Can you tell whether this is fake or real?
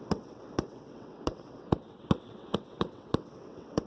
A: fake